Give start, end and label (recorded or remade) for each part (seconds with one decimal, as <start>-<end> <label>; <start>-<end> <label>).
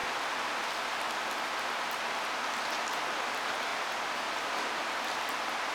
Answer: 0.0-5.7 recorded